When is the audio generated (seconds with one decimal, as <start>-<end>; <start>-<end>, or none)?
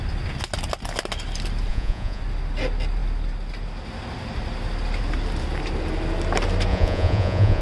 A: 1.7-2.2; 6.7-7.6